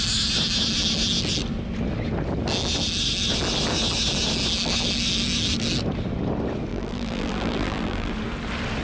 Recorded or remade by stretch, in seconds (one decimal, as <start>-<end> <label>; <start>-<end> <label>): 0.0-6.7 recorded; 6.7-8.1 remade; 8.1-8.8 recorded

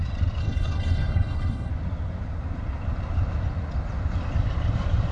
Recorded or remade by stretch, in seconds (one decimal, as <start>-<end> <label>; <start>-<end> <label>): 0.0-0.4 recorded; 0.4-1.7 remade; 1.7-5.1 recorded